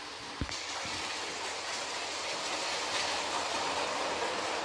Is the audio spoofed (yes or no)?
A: no